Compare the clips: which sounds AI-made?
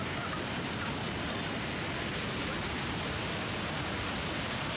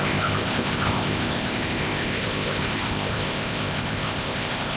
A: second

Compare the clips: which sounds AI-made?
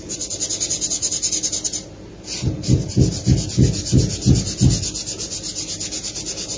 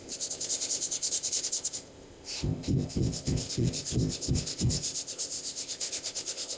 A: second